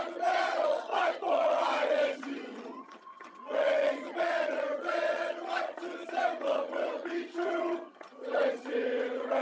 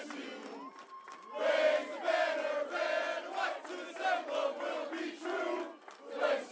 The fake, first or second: first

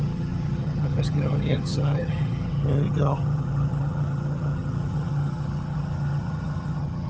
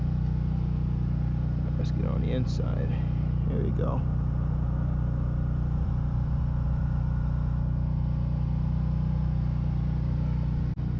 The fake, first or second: first